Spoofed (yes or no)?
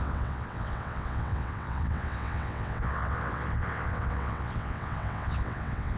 yes